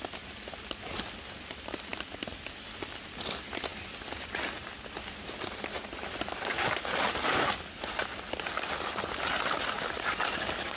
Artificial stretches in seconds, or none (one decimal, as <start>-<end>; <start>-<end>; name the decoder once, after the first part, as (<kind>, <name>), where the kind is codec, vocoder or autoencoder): none